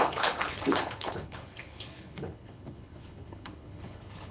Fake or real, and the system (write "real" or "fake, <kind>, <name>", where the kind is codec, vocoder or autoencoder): fake, codec, HILCodec